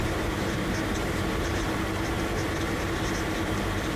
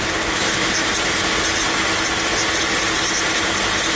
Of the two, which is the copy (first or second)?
first